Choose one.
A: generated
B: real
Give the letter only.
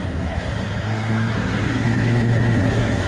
A